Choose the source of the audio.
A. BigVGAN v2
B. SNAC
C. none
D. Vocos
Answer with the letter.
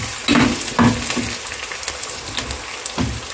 C